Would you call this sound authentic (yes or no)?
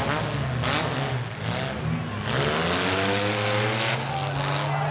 yes